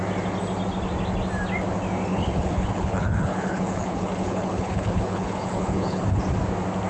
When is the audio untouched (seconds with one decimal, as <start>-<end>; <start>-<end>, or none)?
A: 0.0-2.1; 6.2-6.9